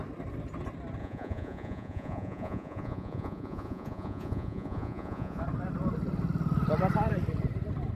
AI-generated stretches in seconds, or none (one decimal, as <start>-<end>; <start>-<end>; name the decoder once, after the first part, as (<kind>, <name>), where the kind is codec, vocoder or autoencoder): 1.0-5.4 (vocoder, Vocos)